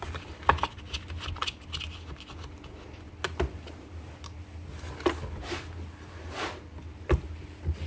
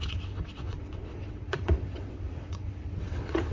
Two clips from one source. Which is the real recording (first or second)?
first